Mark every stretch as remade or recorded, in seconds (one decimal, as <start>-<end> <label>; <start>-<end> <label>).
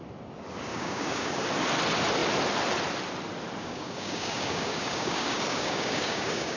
0.0-0.7 recorded; 0.7-1.3 remade; 1.3-3.6 recorded; 3.6-6.6 remade